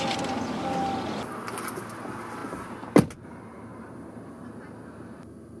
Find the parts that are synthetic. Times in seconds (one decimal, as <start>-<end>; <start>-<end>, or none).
3.7-4.6